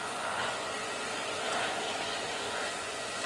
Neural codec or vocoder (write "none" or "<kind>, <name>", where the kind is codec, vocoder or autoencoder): vocoder, Vocos